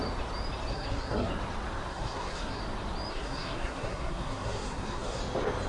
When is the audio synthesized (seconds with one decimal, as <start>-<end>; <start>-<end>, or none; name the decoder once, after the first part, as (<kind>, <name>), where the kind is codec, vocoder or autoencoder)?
0.7-1.3 (codec, SNAC); 1.9-2.6; 3.1-5.2